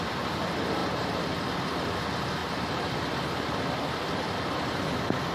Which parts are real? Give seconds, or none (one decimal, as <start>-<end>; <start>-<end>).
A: 0.0-0.8; 1.6-2.4; 3.6-5.3